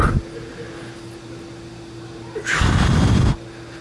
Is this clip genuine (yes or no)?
yes